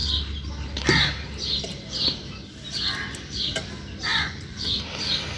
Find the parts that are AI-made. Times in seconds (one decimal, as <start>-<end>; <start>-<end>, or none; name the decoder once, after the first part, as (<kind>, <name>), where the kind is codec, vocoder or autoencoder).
4.1-4.8 (vocoder, Vocos)